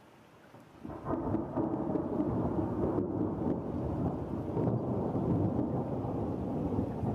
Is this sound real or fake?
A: real